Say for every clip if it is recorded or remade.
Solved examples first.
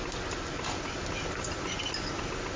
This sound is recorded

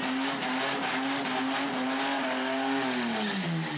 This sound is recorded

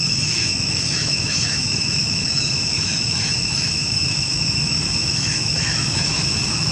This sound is remade